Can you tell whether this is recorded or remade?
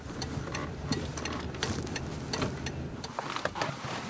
remade